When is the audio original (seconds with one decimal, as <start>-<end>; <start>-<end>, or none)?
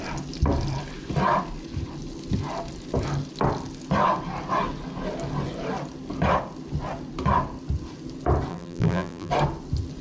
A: 0.0-8.5; 9.3-10.0